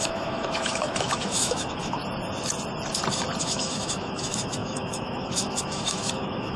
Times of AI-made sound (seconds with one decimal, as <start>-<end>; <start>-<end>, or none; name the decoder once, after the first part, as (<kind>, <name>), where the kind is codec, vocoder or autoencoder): 0.0-2.0 (autoencoder, DAC-VAE); 3.4-6.6